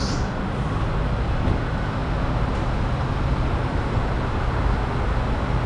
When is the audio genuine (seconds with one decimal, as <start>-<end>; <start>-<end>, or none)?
0.0-5.7